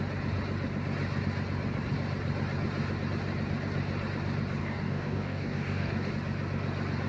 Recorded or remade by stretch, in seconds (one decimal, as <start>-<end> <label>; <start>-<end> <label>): 0.0-4.6 recorded; 4.6-6.1 remade; 6.1-7.1 recorded